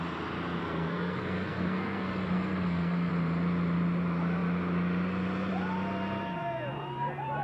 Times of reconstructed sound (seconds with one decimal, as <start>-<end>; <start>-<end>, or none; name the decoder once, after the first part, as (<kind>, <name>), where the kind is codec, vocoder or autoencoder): 0.6-3.1 (codec, SNAC)